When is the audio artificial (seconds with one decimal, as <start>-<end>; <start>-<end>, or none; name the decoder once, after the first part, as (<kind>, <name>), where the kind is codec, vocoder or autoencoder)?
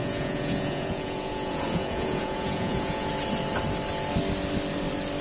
0.0-3.1 (vocoder, Vocos)